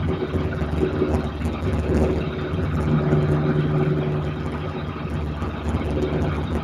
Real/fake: real